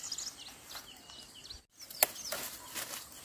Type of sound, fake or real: real